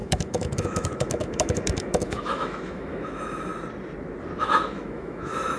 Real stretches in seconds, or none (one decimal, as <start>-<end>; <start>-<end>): 3.5-4.4